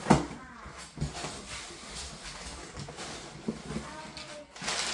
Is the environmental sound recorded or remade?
recorded